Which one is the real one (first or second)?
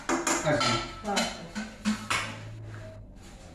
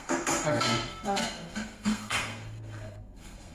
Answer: first